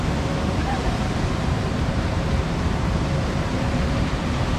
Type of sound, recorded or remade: remade